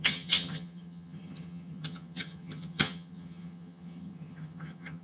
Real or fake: fake